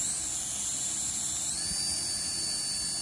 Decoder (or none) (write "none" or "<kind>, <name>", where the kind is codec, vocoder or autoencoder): none